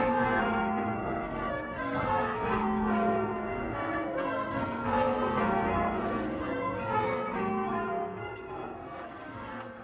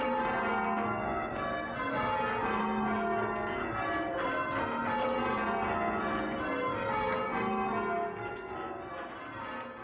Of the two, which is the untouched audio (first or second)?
second